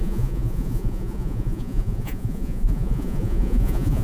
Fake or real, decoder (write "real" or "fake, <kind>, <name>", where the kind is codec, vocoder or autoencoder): fake, vocoder, Vocos